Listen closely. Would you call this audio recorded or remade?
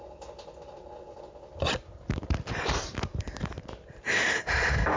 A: remade